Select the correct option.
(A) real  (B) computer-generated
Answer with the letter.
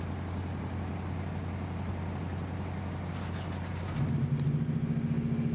A